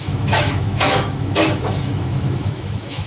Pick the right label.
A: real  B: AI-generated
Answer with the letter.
B